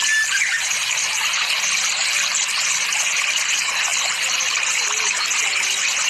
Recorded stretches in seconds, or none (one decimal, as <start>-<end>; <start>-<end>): 0.0-6.1